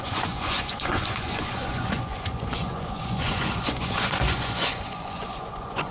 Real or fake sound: fake